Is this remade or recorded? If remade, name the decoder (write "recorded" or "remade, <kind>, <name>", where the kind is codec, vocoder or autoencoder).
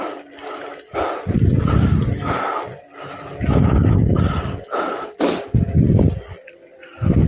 recorded